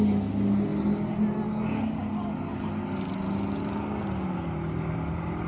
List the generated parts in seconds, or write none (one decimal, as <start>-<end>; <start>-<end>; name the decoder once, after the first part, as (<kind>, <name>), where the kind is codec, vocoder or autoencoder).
none